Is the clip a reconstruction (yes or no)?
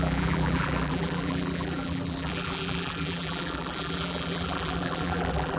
yes